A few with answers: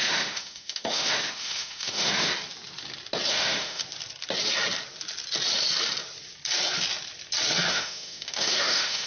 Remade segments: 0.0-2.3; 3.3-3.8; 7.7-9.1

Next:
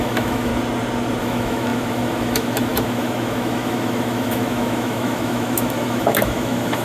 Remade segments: 0.0-0.5; 1.2-6.8

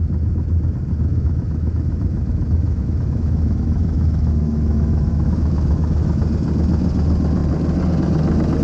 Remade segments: 1.1-6.2